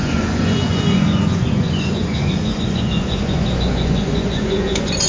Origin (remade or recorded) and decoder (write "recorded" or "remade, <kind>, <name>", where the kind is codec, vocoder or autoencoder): remade, vocoder, Vocos